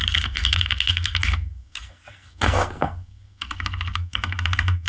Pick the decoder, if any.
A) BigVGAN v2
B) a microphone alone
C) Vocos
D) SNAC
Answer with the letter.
D